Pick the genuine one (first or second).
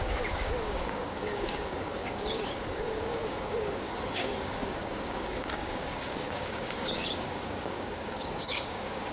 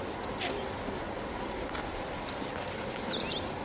second